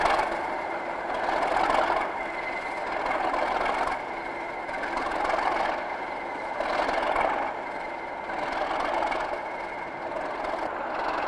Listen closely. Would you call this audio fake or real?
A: real